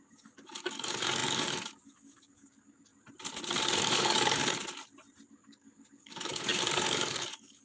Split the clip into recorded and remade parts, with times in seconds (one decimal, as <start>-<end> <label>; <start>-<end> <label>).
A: 0.0-2.9 remade; 2.9-3.8 recorded; 3.8-4.4 remade; 4.4-5.3 recorded; 5.3-7.6 remade